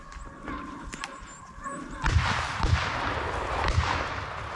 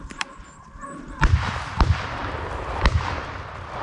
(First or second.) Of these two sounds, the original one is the first